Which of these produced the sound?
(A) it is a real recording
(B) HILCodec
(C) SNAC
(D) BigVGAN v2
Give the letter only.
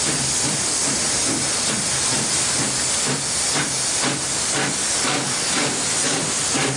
A